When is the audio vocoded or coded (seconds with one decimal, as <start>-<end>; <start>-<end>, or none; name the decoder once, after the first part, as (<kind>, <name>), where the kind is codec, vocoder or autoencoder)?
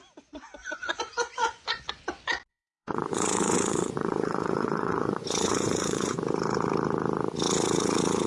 0.6-1.9 (vocoder, Vocos); 2.5-6.2